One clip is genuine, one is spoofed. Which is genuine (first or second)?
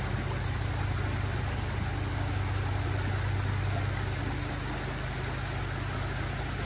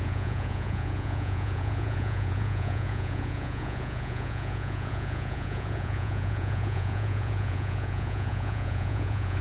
first